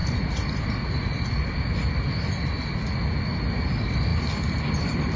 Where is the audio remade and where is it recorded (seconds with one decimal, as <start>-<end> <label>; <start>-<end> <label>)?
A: 0.0-5.2 recorded